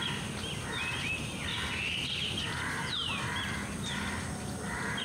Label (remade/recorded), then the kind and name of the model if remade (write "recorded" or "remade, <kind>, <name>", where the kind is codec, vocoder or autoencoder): recorded